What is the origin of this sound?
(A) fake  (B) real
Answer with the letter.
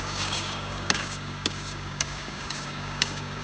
A